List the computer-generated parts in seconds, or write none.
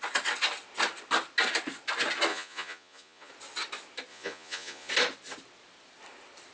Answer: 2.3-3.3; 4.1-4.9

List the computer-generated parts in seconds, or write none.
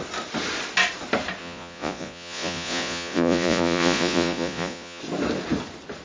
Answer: 1.4-5.0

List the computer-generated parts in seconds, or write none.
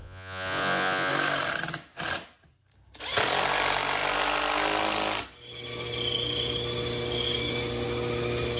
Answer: 0.0-1.1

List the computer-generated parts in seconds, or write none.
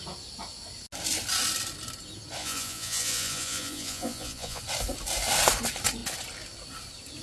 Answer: 2.4-4.6